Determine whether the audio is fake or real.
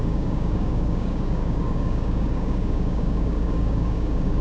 fake